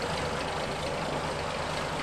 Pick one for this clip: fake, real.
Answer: real